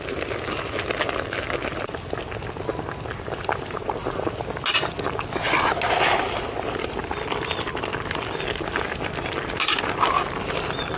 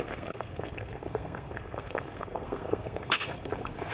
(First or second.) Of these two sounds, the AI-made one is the second